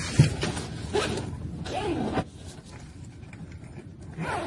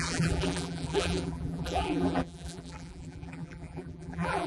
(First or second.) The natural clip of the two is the first